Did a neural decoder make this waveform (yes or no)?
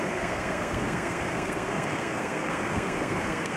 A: yes